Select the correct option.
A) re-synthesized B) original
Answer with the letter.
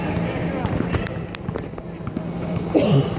B